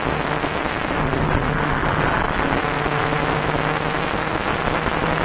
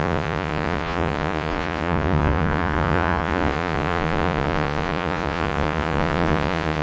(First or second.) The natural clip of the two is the first